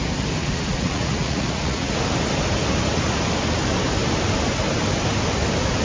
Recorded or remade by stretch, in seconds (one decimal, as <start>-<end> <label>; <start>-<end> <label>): 0.0-0.4 recorded; 0.4-1.9 remade; 1.9-5.8 recorded